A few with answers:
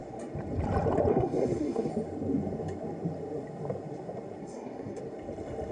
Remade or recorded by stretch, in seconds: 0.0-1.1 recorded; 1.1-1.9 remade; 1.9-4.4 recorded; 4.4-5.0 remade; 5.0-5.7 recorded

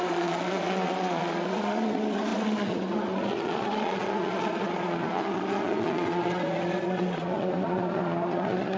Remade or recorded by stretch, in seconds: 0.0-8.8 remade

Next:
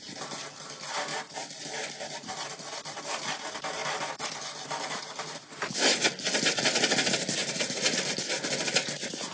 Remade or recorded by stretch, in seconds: 0.0-9.3 recorded

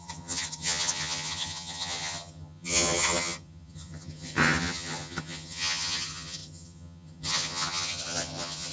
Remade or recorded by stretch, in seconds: 0.0-8.7 remade